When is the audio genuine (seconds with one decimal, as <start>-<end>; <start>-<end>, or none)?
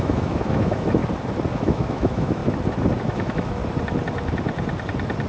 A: 1.0-1.5; 2.4-3.0; 3.6-5.3